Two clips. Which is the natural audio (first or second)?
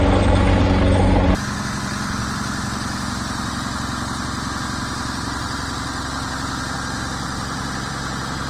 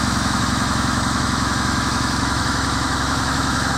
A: first